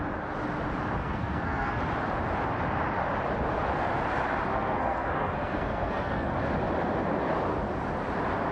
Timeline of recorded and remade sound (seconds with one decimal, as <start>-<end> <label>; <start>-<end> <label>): 0.0-1.0 recorded; 1.0-1.8 remade; 1.8-4.5 recorded; 4.5-6.3 remade; 6.3-8.5 recorded